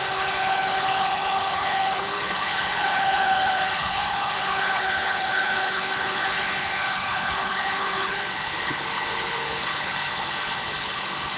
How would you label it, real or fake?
fake